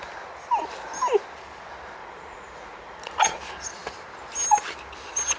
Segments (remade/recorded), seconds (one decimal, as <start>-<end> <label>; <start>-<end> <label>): 0.0-2.0 recorded; 2.0-3.4 remade; 3.4-5.4 recorded